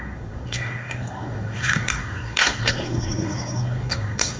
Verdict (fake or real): fake